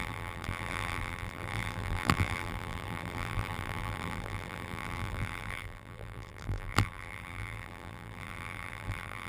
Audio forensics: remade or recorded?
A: remade